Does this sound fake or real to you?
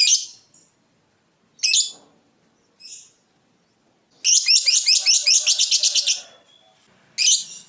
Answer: real